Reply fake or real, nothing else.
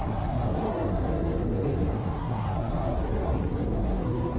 fake